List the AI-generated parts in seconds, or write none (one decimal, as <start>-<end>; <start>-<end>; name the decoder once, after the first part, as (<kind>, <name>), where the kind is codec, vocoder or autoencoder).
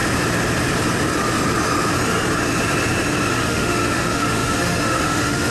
3.3-5.5 (autoencoder, DAC-VAE)